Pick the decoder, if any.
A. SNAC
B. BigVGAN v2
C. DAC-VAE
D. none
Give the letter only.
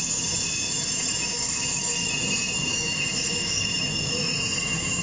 C